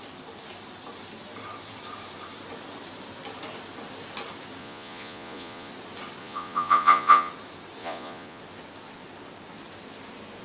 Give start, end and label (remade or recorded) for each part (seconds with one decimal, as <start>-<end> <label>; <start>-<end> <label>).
0.0-4.6 recorded; 4.6-5.7 remade; 5.7-6.2 recorded; 6.2-7.3 remade; 7.3-7.8 recorded; 7.8-8.4 remade; 8.4-10.4 recorded